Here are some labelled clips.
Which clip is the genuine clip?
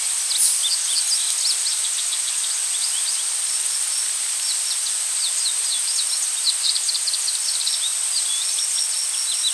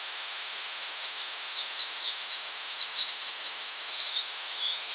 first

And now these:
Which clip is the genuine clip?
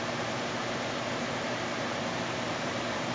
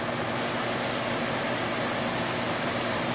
second